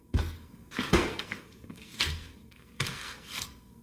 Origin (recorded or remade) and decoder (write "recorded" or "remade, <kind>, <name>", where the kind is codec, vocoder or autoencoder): remade, codec, SNAC